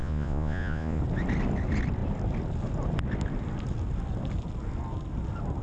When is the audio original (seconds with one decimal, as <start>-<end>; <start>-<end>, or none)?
1.0-5.6